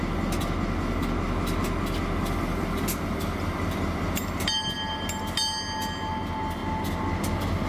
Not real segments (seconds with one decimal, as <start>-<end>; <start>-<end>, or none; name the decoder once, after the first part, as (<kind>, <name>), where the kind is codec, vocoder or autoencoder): none